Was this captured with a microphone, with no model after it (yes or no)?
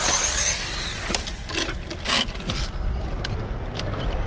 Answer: yes